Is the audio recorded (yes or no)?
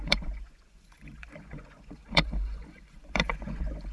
no